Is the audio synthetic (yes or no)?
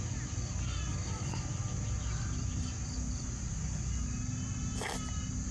no